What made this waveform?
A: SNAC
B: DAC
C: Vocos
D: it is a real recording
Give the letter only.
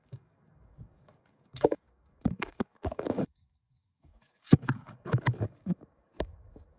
B